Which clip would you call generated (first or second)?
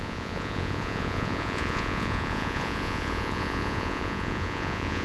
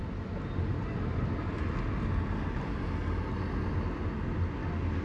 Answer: first